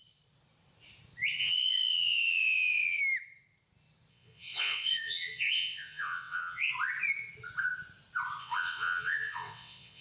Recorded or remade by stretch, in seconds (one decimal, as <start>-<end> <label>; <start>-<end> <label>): 0.0-1.4 recorded; 1.4-3.0 remade; 3.0-4.1 recorded; 4.1-6.7 remade; 6.7-8.4 recorded; 8.4-10.0 remade